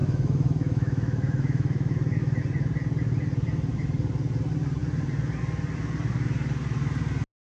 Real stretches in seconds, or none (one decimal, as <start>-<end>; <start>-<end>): 2.4-7.5